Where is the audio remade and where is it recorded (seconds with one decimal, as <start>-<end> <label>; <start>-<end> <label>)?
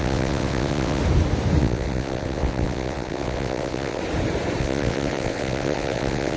0.0-1.0 remade; 1.0-1.6 recorded; 1.6-4.0 remade; 4.0-4.6 recorded; 4.6-6.4 remade